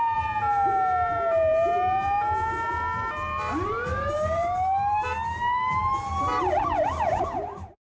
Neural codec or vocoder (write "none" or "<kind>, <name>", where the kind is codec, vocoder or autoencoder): none